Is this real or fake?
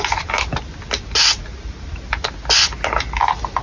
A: real